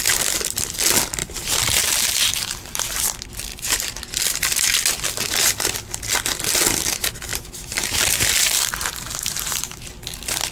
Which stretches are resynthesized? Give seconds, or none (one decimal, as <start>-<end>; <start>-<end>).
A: 1.2-2.8; 3.5-4.1; 7.3-9.9